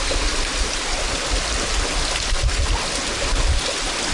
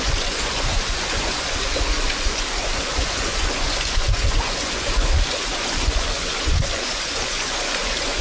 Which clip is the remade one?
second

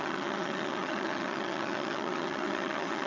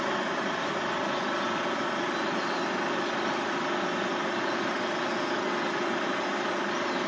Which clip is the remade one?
first